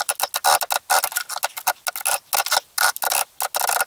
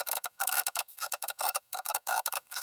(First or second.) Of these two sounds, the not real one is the second